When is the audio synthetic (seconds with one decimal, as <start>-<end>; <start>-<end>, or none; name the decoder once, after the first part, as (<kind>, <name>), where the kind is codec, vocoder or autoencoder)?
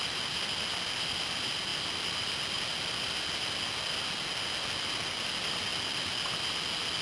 none